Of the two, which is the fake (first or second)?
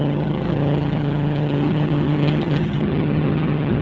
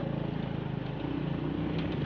first